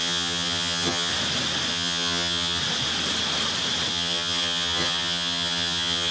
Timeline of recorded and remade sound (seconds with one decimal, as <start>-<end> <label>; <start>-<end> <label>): 0.0-1.1 remade; 1.1-1.7 recorded; 1.7-2.6 remade; 2.6-3.9 recorded; 3.9-6.1 remade